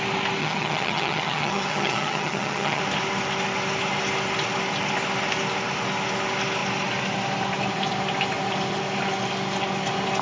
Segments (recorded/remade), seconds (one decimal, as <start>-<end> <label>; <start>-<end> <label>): 0.0-0.4 recorded; 0.4-2.8 remade; 2.8-10.2 recorded